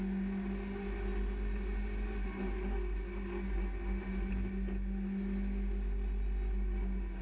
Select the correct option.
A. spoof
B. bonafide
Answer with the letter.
B